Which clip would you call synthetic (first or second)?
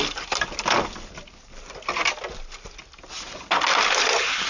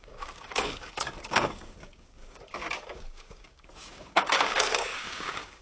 second